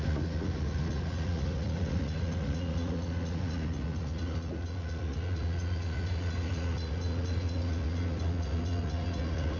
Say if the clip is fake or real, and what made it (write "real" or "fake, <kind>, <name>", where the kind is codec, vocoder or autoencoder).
fake, vocoder, Vocos